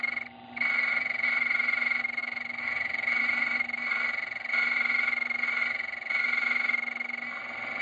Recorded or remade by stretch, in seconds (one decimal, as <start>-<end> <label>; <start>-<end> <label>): 0.0-2.2 recorded; 2.2-3.2 remade; 3.2-7.8 recorded